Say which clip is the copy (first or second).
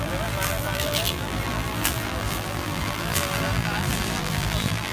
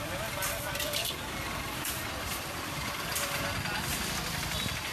first